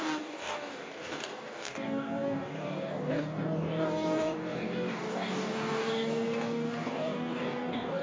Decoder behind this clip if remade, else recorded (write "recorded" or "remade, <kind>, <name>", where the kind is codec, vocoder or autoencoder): remade, codec, DAC